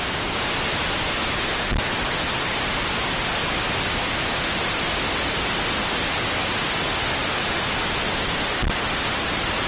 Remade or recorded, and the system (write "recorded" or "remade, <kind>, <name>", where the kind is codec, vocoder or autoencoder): recorded